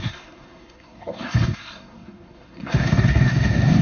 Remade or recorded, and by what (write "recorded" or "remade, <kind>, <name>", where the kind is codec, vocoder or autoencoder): remade, codec, SNAC